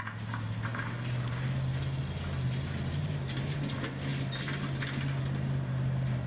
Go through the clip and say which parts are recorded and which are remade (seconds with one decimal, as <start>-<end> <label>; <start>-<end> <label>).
0.0-6.3 recorded